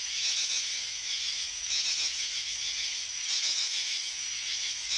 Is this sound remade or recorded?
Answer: remade